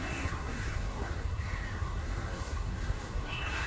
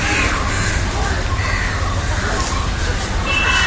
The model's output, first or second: first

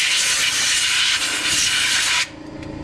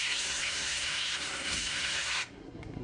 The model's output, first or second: second